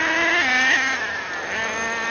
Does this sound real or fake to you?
real